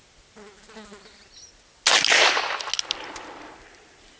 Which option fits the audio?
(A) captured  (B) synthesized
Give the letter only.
A